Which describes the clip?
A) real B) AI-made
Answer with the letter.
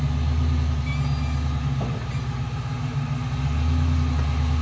A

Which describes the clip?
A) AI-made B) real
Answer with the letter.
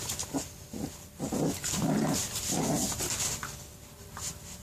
B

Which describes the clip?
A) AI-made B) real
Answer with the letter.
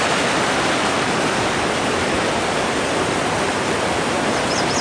B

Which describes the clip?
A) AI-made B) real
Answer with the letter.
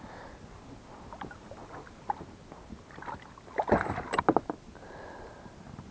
B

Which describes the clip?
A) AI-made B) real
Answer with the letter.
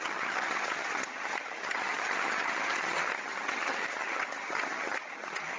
A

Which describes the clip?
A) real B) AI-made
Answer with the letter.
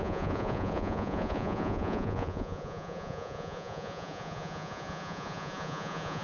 B